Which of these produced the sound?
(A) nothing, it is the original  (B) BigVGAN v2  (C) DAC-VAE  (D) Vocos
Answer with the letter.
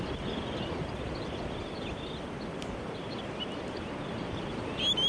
A